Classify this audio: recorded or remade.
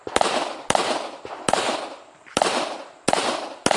recorded